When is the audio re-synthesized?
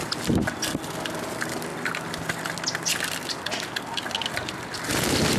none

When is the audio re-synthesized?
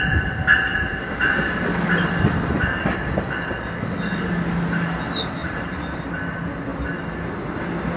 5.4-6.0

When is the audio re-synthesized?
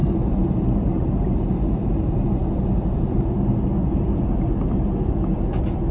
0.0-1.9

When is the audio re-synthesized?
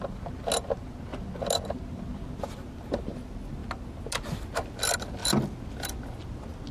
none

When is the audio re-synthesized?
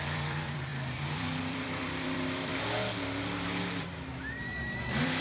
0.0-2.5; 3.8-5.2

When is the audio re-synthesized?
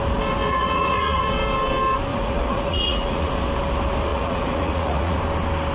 0.4-1.3; 2.1-3.3; 4.1-5.2